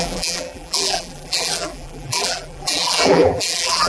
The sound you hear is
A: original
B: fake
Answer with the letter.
B